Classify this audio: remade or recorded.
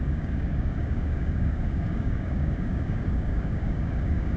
remade